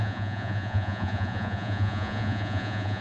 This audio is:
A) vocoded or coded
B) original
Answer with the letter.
A